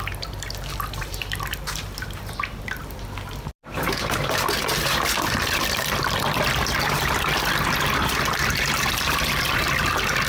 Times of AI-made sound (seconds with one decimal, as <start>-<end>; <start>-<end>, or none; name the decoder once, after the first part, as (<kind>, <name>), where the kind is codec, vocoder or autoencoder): 0.0-10.3 (vocoder, BigVGAN v2)